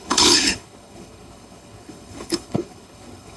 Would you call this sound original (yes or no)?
no